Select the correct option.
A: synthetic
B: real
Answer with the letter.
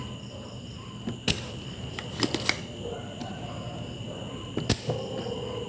B